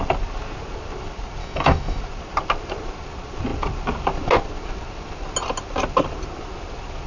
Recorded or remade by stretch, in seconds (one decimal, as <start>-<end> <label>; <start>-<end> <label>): 0.0-1.4 recorded; 1.4-2.0 remade; 2.0-7.1 recorded